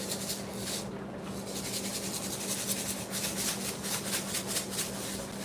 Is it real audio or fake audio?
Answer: real